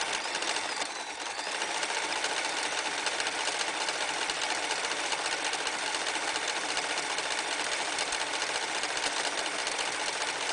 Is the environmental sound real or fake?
real